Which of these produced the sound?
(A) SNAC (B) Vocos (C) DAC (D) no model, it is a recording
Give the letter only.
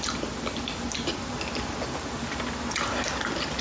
D